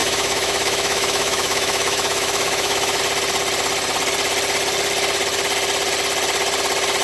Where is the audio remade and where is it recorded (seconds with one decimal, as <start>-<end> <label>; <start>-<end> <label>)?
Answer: 0.0-3.0 remade; 3.0-7.0 recorded